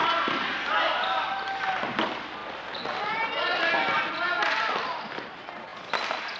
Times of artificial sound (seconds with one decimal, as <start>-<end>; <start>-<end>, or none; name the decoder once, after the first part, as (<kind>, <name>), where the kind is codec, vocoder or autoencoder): none